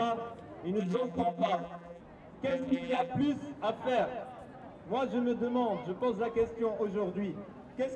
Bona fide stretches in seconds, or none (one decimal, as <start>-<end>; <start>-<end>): 0.0-0.8; 2.0-2.5; 3.1-8.0